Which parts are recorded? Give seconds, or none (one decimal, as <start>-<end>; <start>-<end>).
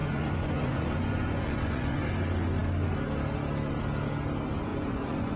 2.1-4.7